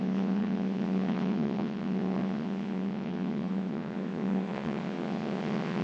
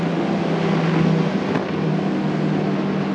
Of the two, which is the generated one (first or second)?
first